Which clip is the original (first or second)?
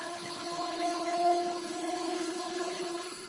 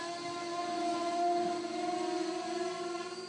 second